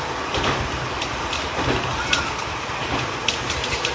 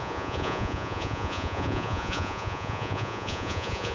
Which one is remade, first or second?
second